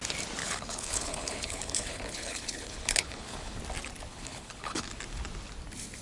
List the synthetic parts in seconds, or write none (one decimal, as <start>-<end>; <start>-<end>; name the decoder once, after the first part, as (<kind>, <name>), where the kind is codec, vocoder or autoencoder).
0.4-3.6 (codec, HILCodec); 4.1-4.9